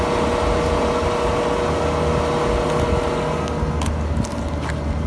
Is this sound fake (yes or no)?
no